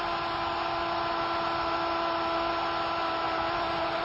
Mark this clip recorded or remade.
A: recorded